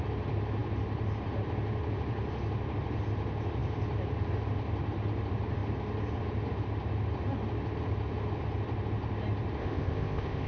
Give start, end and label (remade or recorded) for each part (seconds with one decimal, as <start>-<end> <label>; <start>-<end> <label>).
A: 0.0-9.6 recorded; 9.6-10.5 remade